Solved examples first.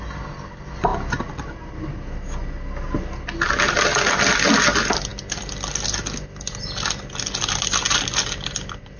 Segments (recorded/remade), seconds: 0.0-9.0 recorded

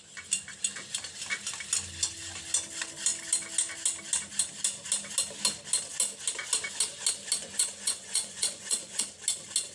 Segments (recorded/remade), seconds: 0.0-7.4 recorded; 7.4-9.0 remade; 9.0-9.7 recorded

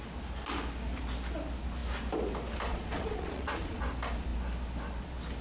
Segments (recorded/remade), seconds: 0.0-2.7 recorded; 2.7-3.8 remade; 3.8-5.4 recorded